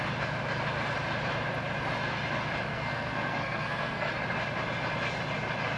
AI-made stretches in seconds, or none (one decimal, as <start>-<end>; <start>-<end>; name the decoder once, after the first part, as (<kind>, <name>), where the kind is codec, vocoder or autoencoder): 2.7-4.1 (codec, SNAC)